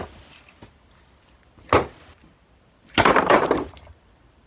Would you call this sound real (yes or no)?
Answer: yes